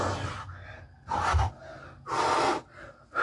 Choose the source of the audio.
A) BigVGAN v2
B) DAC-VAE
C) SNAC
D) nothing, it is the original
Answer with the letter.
D